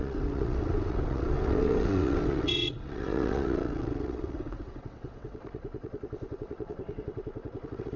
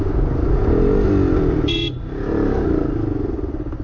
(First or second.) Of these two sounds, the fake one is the first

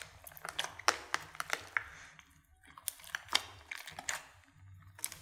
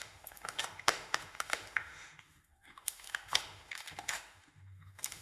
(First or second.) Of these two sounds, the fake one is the second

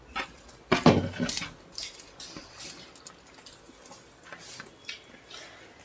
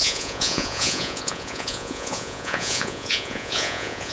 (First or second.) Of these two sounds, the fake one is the second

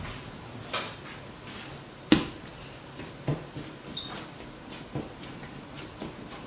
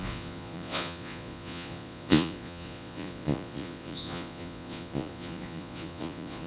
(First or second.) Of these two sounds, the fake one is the second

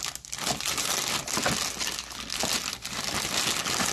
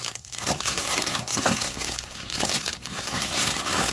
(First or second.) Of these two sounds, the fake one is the second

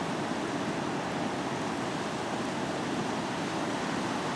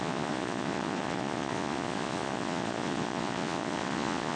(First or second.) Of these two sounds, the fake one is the second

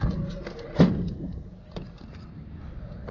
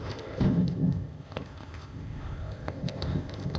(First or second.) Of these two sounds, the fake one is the second